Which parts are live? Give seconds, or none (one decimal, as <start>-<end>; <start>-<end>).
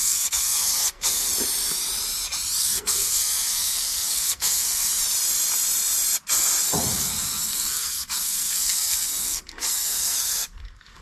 1.3-2.6; 4.9-6.9